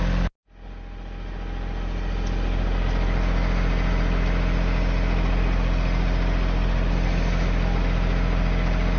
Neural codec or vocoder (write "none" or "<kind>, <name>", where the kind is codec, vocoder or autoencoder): none